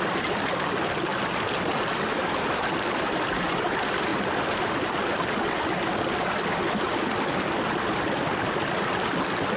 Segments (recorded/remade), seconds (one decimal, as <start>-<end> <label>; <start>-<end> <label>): 0.0-9.6 recorded